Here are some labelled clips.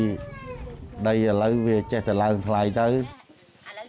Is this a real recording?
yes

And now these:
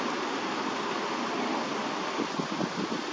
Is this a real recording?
yes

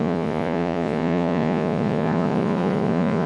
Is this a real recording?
no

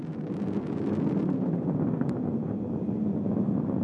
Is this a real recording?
yes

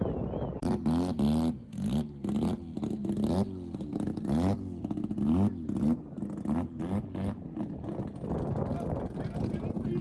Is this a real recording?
yes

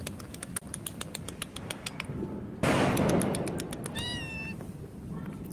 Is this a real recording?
yes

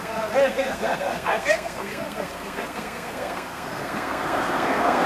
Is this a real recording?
no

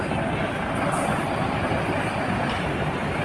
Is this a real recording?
yes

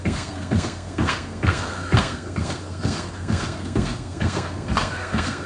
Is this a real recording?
no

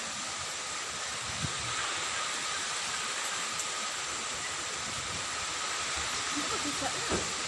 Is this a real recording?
no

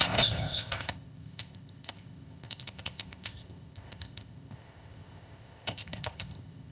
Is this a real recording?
no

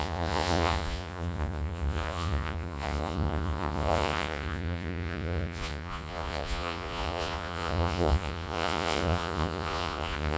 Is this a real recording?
no